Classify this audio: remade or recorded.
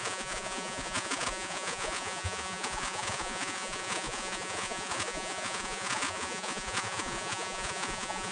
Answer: remade